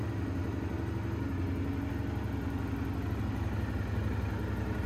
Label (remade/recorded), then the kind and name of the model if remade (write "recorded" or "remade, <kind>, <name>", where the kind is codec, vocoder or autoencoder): recorded